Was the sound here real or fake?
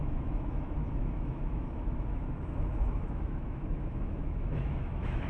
fake